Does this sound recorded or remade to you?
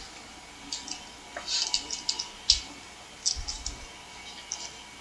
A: recorded